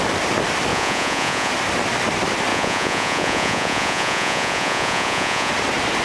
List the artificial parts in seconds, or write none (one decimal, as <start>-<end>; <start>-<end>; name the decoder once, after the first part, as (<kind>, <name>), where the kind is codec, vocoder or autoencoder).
0.7-1.5 (vocoder, Vocos); 2.5-5.5